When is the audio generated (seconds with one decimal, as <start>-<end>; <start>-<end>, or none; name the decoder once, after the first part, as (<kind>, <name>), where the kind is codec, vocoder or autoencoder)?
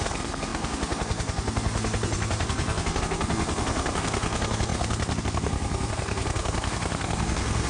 0.0-7.7 (codec, SNAC)